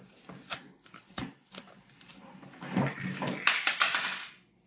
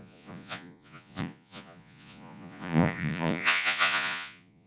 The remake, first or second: second